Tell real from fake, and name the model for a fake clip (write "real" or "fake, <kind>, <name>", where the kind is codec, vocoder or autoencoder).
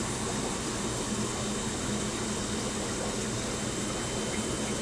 real